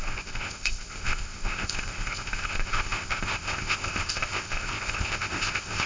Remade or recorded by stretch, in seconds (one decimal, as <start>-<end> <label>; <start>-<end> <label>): 0.0-5.9 remade